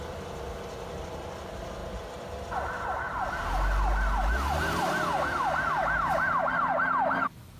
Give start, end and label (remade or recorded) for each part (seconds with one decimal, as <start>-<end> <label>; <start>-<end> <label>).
0.0-1.8 remade; 1.8-6.4 recorded; 6.4-7.6 remade